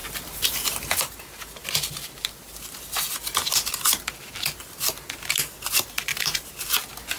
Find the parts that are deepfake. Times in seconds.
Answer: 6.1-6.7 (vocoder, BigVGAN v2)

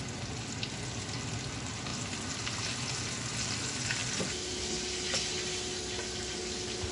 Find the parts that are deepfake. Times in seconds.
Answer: none

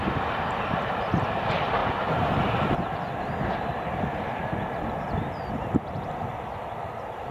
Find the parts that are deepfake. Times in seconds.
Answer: 0.0-1.8 (vocoder, BigVGAN v2); 5.5-7.3

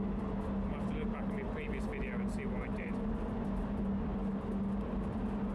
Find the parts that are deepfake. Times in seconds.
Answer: 2.7-3.3 (vocoder, BigVGAN v2)

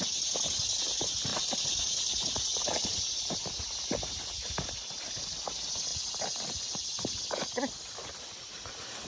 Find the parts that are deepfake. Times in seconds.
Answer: 1.3-4.2 (vocoder, BigVGAN v2); 5.9-7.2

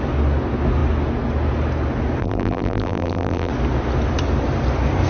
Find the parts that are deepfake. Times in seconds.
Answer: 2.2-3.5 (vocoder, BigVGAN v2)

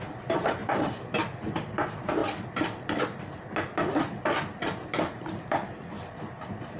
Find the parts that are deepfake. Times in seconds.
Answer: 0.0-0.6 (vocoder, BigVGAN v2); 1.4-2.2; 6.3-6.8

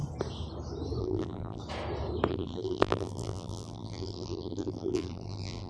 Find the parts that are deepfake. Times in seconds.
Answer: 1.0-1.6 (vocoder, BigVGAN v2); 2.3-5.7